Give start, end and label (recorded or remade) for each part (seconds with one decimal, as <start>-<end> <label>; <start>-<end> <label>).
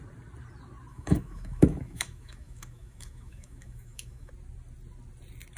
0.0-0.9 recorded; 0.9-4.3 remade; 4.3-5.6 recorded